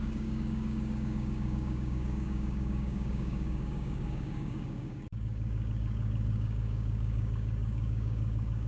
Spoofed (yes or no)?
yes